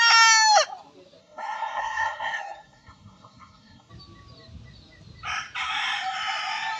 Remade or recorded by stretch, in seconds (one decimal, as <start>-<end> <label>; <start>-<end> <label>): 0.0-1.2 recorded; 1.2-3.9 remade; 3.9-6.8 recorded